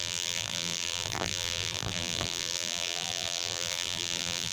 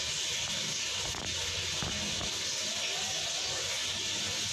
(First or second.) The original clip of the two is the second